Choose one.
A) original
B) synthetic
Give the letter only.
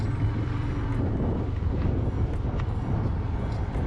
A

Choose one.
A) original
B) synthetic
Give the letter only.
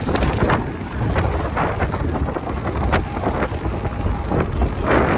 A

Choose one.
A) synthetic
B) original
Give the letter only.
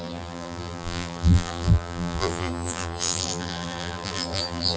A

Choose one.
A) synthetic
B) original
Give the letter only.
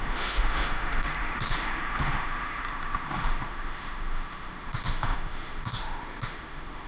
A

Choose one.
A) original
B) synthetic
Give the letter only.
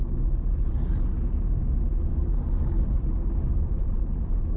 A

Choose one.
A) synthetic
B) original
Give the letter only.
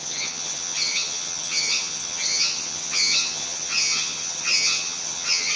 A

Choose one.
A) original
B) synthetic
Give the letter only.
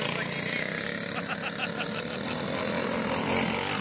A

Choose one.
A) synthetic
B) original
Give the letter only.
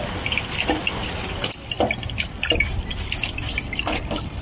A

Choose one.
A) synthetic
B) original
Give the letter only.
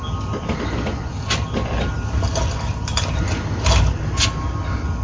B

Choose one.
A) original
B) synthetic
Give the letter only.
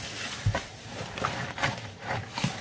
B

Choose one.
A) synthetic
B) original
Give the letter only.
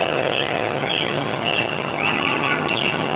A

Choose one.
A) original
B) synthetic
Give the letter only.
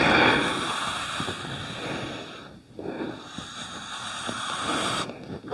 A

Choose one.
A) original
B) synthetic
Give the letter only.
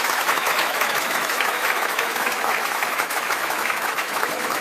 B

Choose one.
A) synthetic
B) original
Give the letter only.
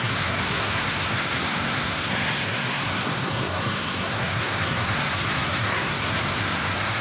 A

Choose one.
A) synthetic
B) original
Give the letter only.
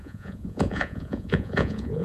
A